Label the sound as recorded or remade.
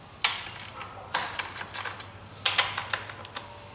recorded